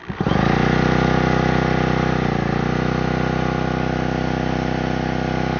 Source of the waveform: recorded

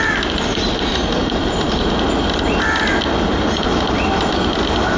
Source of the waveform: recorded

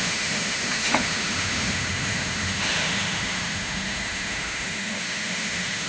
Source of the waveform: remade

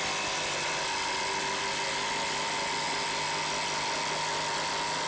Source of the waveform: recorded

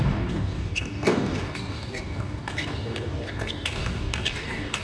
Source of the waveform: remade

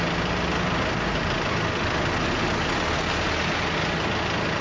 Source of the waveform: recorded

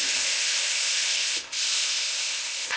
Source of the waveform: remade